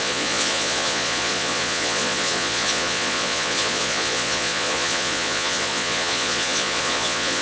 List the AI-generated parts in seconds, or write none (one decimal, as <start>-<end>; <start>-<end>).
0.0-7.4